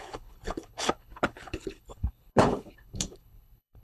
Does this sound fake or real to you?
fake